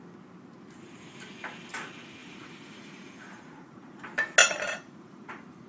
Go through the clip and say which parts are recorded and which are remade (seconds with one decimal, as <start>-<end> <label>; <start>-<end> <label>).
0.0-2.2 recorded; 2.2-4.0 remade; 4.0-4.4 recorded; 4.4-5.7 remade